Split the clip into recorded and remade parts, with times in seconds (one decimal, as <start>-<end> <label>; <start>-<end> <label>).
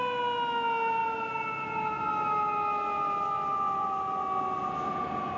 0.0-5.4 recorded